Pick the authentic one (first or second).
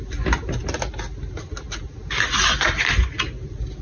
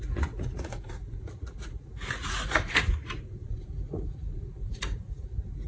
first